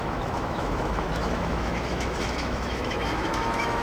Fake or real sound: fake